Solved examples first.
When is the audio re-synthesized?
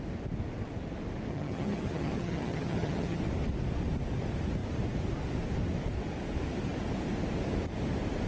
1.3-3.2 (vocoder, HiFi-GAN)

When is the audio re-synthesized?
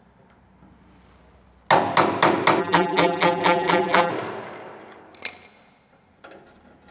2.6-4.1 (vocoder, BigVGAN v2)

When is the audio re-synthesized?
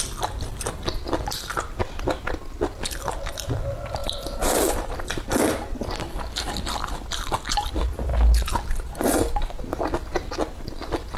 0.0-1.8 (vocoder, BigVGAN v2); 3.0-8.1; 10.6-11.2